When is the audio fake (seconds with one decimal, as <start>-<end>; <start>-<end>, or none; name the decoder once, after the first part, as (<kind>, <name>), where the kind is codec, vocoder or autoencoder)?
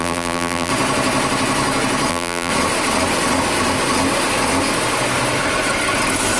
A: 0.0-0.7 (vocoder, BigVGAN v2); 2.1-2.5